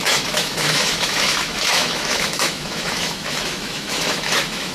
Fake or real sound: fake